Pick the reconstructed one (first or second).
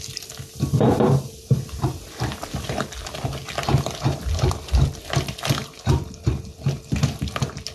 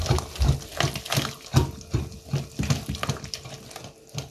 first